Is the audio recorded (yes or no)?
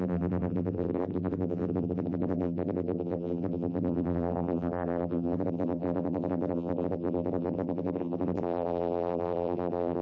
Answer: no